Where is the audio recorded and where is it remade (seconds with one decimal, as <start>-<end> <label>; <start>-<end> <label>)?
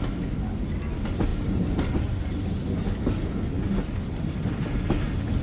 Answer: 0.0-5.4 recorded